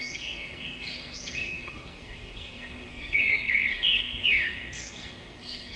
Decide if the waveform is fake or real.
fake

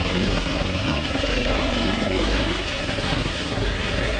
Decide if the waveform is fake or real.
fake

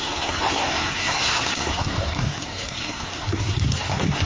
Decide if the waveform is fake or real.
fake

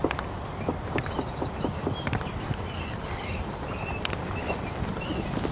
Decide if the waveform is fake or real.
fake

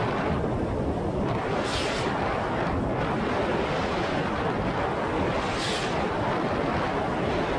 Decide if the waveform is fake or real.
real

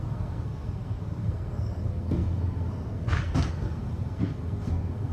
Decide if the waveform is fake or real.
fake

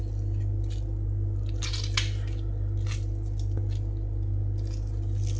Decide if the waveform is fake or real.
real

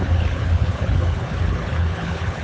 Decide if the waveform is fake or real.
fake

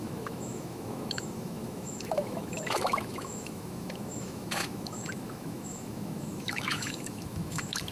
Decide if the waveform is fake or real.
fake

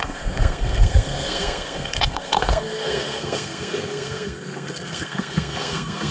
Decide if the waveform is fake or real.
fake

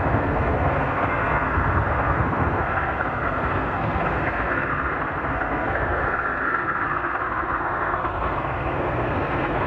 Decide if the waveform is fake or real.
fake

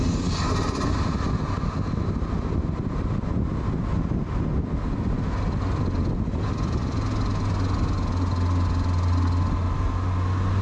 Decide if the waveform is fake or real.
real